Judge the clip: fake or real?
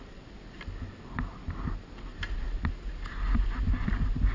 real